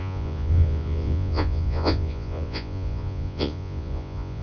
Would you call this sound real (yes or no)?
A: no